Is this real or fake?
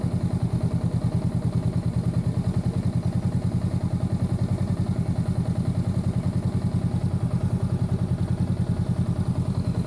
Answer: real